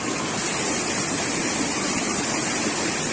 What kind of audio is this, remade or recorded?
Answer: recorded